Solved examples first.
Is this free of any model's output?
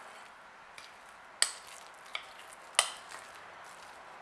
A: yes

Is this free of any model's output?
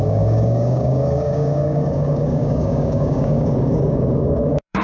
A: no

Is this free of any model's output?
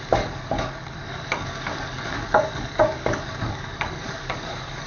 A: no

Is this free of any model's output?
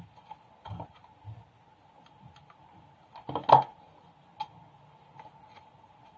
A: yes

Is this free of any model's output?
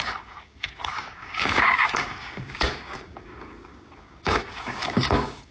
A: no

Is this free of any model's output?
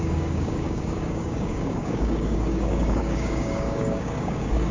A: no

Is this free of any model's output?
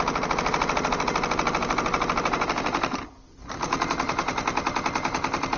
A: yes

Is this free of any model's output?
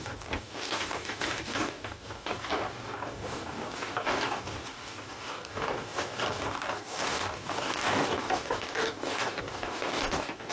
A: no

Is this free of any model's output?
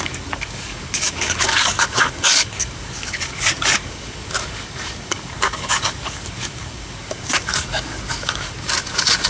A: no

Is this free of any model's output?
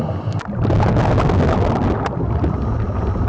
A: yes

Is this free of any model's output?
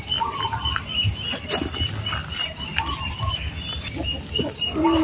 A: yes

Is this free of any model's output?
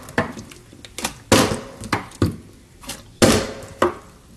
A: yes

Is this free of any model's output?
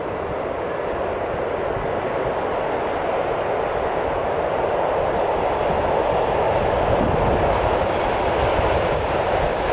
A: yes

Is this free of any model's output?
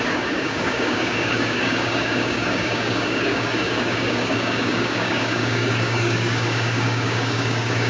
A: no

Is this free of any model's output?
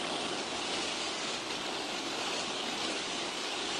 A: no